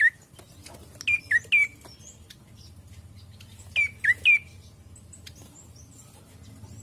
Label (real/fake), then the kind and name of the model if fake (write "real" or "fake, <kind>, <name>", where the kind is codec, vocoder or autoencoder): real